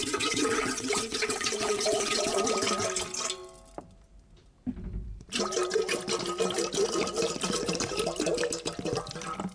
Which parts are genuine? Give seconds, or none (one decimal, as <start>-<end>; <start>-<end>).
2.4-9.5

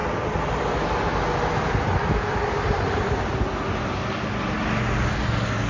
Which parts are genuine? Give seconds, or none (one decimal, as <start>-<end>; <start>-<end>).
0.0-5.7